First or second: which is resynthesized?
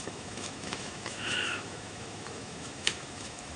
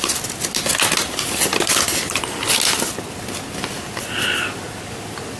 first